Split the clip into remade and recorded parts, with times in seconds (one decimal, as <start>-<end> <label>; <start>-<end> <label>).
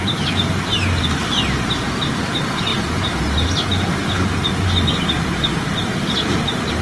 0.0-6.8 recorded